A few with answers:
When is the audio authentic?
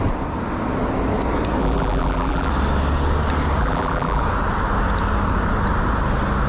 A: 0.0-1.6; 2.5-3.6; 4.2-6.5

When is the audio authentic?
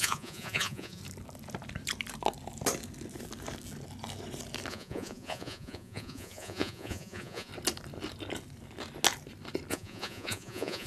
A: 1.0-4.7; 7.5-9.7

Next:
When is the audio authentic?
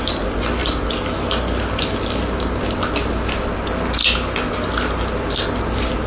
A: 0.0-6.1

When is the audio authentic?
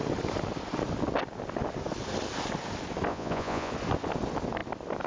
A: 0.0-3.1; 3.7-5.1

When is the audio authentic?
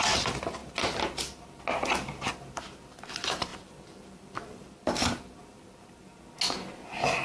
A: 0.0-3.5; 5.3-7.2